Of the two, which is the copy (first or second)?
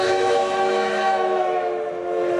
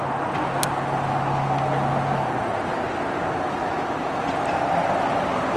first